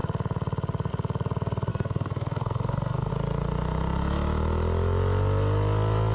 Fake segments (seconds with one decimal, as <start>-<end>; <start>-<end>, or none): 1.7-3.1